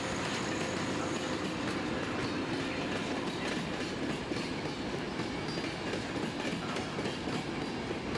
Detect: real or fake real